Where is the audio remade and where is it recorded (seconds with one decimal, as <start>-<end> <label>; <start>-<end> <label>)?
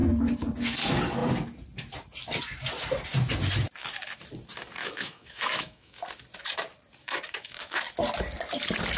0.0-4.8 recorded; 4.8-6.0 remade; 6.0-7.0 recorded; 7.0-7.8 remade; 7.8-9.0 recorded